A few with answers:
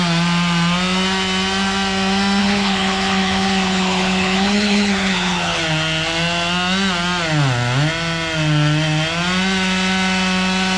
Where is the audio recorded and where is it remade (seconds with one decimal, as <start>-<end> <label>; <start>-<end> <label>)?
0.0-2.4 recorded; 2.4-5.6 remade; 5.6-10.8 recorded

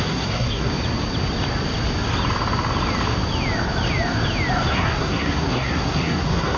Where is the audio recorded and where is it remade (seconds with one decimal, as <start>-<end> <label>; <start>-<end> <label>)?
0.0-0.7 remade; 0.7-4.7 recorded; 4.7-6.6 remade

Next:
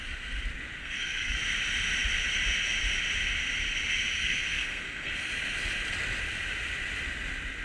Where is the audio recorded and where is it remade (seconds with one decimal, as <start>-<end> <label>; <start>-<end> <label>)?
0.0-0.8 recorded; 0.8-1.4 remade; 1.4-4.2 recorded; 4.2-5.1 remade; 5.1-7.6 recorded

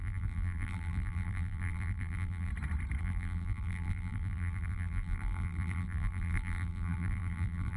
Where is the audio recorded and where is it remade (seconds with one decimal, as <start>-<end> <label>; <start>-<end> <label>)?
0.0-2.5 remade; 2.5-3.0 recorded; 3.0-7.8 remade